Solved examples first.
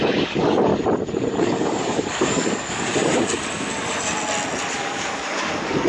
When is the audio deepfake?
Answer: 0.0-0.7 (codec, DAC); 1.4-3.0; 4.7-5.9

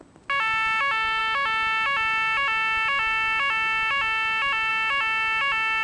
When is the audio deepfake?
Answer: none

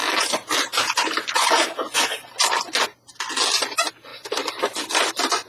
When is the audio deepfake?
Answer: none